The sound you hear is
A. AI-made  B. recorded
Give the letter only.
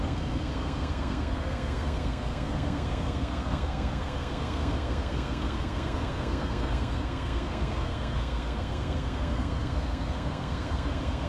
A